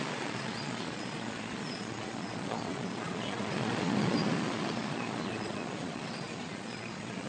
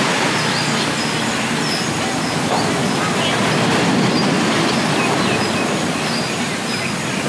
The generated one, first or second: first